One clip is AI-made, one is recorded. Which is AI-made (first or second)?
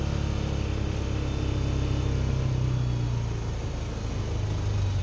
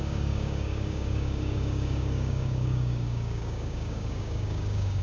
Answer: second